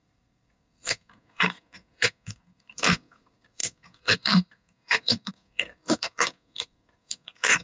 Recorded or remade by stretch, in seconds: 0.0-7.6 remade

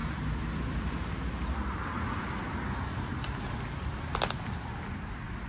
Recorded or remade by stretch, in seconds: 0.0-5.5 recorded

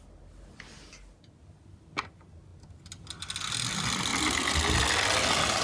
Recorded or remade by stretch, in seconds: 0.0-5.6 recorded

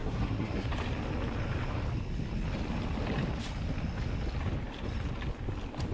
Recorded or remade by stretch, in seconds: 0.0-0.7 remade; 0.7-5.9 recorded

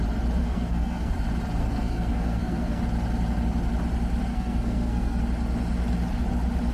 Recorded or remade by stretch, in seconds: 0.0-0.4 recorded; 0.4-1.1 remade; 1.1-1.6 recorded; 1.6-2.8 remade; 2.8-4.3 recorded; 4.3-5.2 remade; 5.2-6.7 recorded

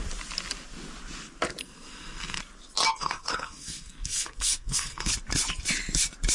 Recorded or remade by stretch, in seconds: 0.0-1.6 recorded; 1.6-2.4 remade; 2.4-2.9 recorded; 2.9-5.1 remade; 5.1-6.3 recorded

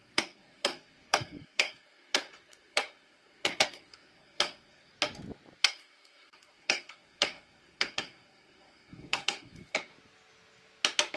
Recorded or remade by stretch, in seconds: 0.0-4.9 remade; 4.9-5.6 recorded; 5.6-9.9 remade; 9.9-11.2 recorded